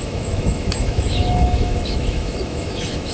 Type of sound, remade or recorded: remade